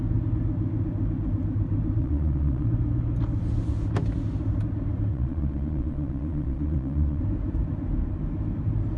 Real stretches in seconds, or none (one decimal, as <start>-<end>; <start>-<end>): 0.0-2.0; 2.7-5.1; 7.2-9.0